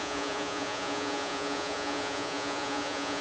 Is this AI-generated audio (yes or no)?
yes